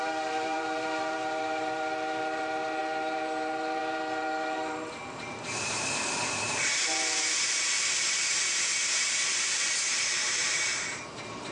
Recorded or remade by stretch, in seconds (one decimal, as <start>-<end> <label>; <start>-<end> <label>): 0.0-11.5 remade